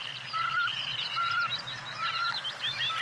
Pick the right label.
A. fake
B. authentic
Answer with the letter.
B